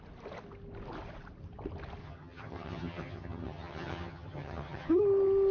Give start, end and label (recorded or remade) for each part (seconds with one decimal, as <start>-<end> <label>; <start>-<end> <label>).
0.0-2.0 recorded; 2.0-5.0 remade; 5.0-5.5 recorded